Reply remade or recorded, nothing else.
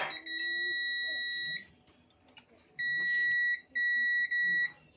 recorded